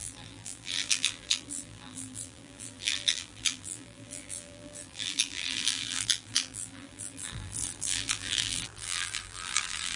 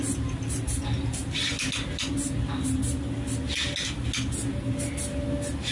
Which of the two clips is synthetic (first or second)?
first